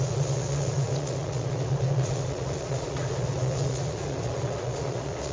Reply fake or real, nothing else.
fake